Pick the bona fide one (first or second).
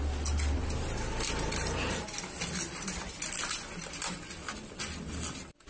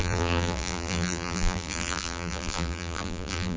first